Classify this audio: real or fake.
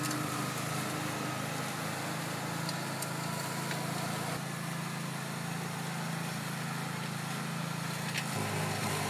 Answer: real